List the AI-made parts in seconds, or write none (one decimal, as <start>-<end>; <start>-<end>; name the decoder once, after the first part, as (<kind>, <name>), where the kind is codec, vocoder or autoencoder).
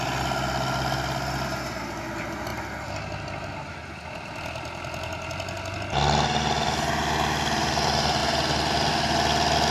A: none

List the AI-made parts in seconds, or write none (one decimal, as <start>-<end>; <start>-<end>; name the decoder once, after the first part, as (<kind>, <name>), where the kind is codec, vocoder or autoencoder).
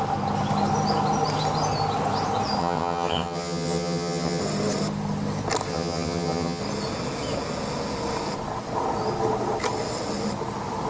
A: 2.6-4.4 (vocoder, HiFi-GAN); 5.7-6.6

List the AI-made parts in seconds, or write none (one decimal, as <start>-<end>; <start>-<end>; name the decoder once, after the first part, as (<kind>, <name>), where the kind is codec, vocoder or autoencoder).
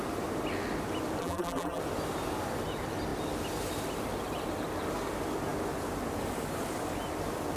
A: 1.2-1.8 (vocoder, BigVGAN v2)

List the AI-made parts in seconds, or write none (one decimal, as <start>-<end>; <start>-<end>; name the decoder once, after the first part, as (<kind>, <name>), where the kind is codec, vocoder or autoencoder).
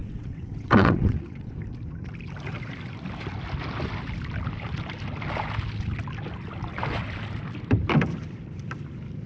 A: 0.0-1.5 (vocoder, WaveNeXt)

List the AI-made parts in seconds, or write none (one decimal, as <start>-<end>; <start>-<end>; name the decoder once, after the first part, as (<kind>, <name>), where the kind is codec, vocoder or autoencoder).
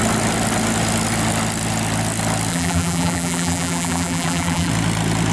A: 2.5-4.7 (vocoder, BigVGAN v2)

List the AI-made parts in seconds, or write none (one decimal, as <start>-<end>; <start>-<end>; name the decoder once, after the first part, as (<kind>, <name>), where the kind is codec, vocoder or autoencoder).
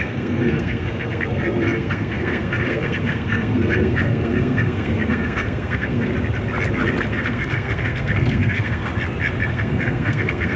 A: 0.0-6.1 (codec, SNAC); 7.1-8.9; 9.5-10.6